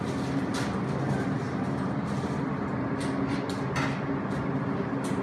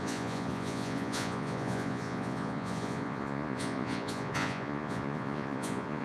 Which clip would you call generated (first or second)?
second